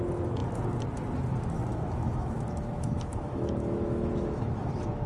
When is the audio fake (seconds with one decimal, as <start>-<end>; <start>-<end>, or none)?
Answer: 1.7-5.1